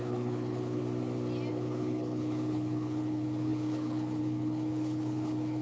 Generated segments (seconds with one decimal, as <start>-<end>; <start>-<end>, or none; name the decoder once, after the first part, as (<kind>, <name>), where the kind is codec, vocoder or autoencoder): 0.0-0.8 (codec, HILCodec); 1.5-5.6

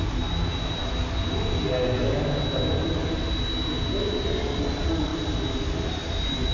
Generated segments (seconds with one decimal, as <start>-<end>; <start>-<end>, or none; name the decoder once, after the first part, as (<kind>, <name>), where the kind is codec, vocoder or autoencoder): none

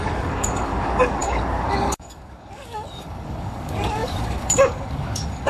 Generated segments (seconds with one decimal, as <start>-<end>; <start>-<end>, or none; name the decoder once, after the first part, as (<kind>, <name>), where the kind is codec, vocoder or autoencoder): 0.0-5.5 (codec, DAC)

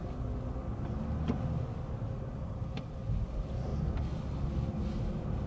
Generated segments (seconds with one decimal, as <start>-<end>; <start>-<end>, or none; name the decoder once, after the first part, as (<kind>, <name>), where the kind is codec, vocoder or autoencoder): none